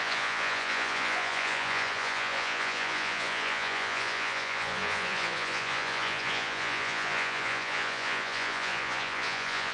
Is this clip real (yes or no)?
no